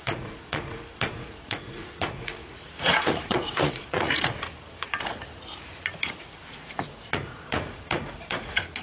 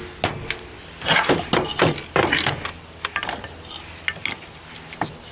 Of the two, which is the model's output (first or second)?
first